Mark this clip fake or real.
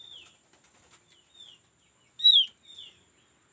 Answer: real